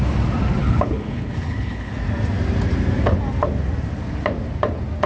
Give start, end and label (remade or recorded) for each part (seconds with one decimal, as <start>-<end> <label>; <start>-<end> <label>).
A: 0.0-0.6 recorded; 0.6-1.9 remade; 1.9-5.1 recorded